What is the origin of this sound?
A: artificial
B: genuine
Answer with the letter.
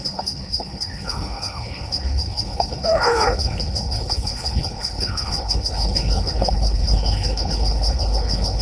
A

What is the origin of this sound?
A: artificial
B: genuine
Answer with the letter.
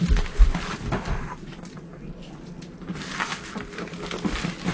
B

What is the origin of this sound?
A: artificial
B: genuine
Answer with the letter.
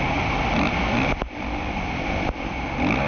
B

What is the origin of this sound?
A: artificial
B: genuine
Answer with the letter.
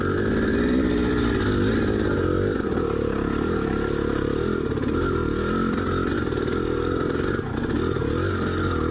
B